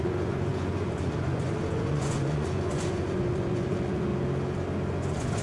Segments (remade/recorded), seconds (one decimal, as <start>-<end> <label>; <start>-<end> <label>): 0.0-4.1 remade; 4.1-4.9 recorded; 4.9-5.4 remade